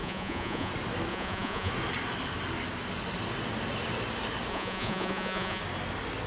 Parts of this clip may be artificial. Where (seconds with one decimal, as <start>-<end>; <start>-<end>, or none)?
0.0-0.7; 1.1-1.7; 4.5-5.6